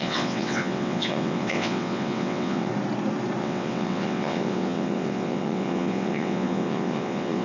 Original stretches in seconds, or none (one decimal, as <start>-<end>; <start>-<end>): 2.7-3.4